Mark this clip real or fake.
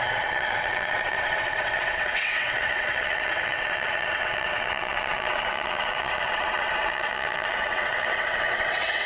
fake